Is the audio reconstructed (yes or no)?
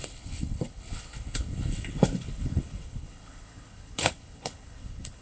yes